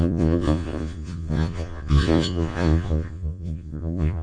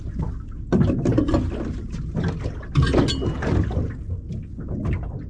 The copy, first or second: first